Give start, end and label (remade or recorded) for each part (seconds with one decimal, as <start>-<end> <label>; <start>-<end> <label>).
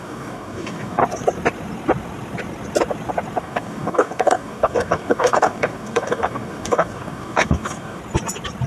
0.0-1.0 remade; 1.0-3.4 recorded; 3.4-8.0 remade; 8.0-8.7 recorded